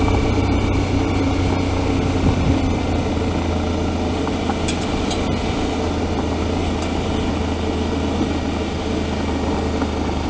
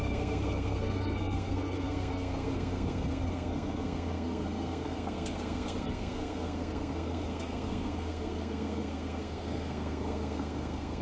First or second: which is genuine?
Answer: first